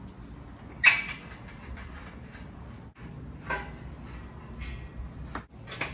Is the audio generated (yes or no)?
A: no